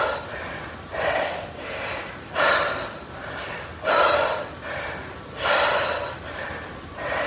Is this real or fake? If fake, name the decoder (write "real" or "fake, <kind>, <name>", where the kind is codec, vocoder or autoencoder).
real